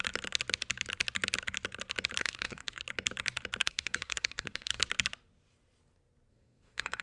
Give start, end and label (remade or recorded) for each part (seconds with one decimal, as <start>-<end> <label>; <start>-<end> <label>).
0.0-2.2 recorded; 2.2-2.8 remade; 2.8-3.6 recorded; 3.6-4.8 remade; 4.8-6.3 recorded; 6.3-7.0 remade